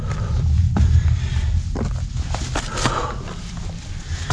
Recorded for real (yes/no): yes